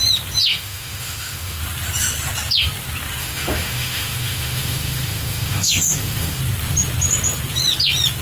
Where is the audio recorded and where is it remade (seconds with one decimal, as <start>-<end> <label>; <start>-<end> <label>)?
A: 0.0-0.5 recorded; 0.5-1.6 remade; 1.6-3.2 recorded; 3.2-6.4 remade; 6.4-8.2 recorded

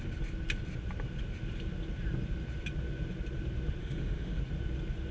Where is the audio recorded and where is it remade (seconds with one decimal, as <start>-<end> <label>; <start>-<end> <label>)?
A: 0.0-3.8 recorded; 3.8-4.4 remade; 4.4-5.1 recorded